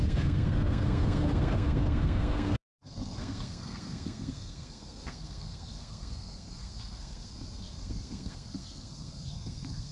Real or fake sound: fake